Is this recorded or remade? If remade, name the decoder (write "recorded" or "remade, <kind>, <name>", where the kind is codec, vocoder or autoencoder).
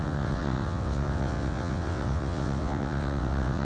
remade, vocoder, WaveNeXt